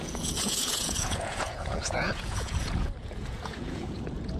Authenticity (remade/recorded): remade